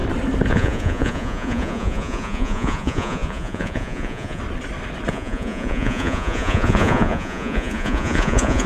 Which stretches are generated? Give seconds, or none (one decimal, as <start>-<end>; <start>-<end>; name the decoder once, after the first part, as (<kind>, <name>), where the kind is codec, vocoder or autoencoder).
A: 0.5-4.4 (vocoder, Vocos); 5.1-8.7